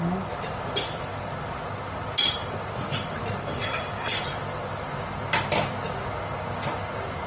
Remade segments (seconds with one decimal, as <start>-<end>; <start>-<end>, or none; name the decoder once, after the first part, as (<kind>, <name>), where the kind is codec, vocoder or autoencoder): none